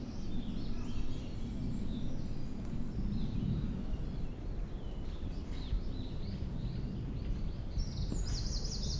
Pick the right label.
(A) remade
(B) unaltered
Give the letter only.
B